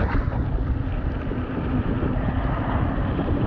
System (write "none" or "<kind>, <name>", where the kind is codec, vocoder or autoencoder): none